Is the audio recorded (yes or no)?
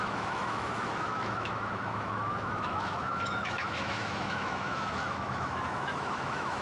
no